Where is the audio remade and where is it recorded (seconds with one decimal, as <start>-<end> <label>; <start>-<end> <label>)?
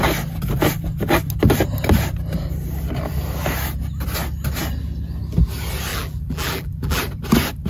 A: 0.0-5.9 recorded; 5.9-7.0 remade; 7.0-7.7 recorded